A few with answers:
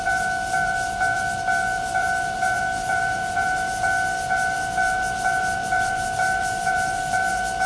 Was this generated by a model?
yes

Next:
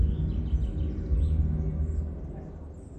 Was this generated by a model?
no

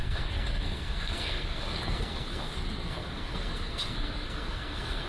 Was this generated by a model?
yes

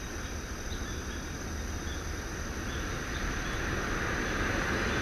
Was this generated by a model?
no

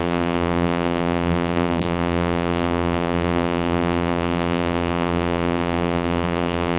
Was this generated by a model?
yes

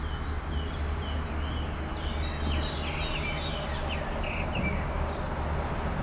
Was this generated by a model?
no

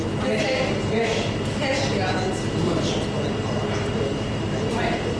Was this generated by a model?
no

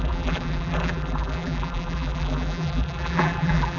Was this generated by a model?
yes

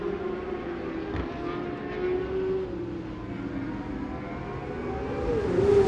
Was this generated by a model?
no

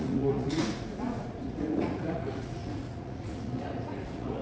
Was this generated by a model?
yes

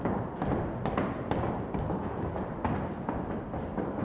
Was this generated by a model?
no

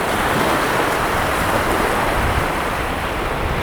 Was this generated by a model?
yes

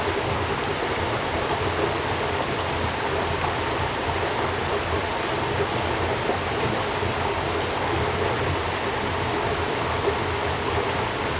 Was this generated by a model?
no